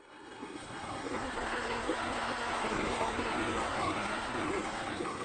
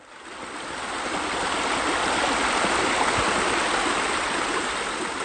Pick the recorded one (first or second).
second